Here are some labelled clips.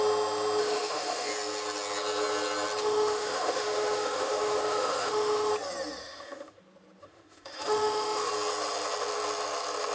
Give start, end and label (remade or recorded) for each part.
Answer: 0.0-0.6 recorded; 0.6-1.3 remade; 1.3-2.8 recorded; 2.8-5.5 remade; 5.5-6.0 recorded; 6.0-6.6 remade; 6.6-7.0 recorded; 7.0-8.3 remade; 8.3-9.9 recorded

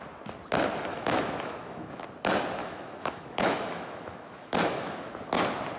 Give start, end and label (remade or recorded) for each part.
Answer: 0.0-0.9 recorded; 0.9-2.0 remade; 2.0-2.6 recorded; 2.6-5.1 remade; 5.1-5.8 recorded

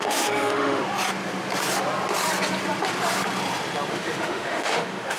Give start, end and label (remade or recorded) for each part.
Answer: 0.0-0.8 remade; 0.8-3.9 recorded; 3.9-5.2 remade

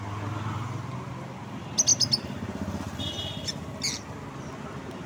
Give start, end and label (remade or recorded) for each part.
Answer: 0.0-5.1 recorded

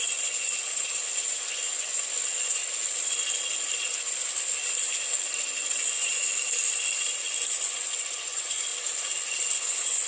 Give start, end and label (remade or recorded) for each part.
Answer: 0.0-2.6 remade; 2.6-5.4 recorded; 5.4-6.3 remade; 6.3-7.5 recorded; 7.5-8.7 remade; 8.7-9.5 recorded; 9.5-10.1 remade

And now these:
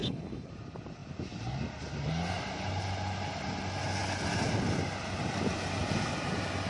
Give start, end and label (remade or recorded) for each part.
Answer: 0.0-0.5 remade; 0.5-6.7 recorded